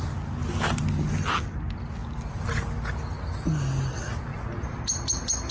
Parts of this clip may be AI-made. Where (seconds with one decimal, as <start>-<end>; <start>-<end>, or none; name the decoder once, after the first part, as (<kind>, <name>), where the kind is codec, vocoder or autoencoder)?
none